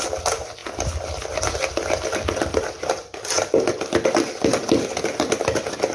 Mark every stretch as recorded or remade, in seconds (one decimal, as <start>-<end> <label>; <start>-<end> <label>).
0.0-5.9 recorded